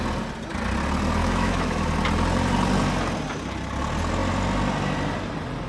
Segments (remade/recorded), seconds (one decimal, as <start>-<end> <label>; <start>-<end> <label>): 0.0-1.2 recorded; 1.2-1.9 remade; 1.9-5.7 recorded